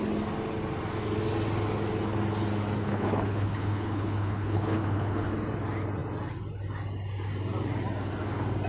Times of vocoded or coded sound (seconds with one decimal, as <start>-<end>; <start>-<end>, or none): 2.8-5.3